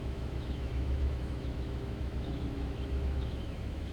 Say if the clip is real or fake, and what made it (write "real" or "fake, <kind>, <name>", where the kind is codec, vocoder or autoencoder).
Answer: fake, autoencoder, DAC-VAE